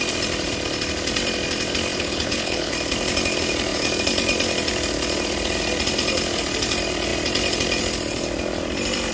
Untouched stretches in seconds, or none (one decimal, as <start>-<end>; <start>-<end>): 0.0-1.9; 2.7-9.1